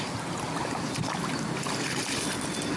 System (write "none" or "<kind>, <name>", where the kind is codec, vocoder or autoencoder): none